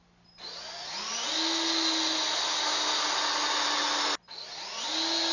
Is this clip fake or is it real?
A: real